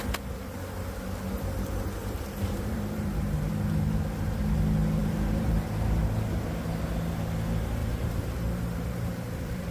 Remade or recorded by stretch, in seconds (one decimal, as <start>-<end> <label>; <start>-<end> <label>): 0.0-2.0 recorded; 2.0-3.5 remade; 3.5-5.0 recorded; 5.0-6.0 remade; 6.0-7.8 recorded; 7.8-9.7 remade